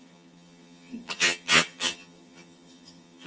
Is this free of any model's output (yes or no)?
no